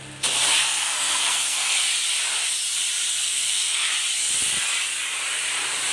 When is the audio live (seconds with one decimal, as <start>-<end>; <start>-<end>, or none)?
0.0-0.6; 1.8-3.1; 3.9-5.9